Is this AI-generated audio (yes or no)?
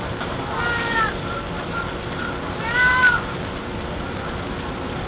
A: no